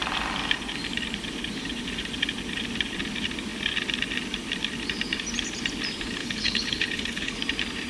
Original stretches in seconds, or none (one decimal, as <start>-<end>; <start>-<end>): 0.0-6.2; 7.4-7.9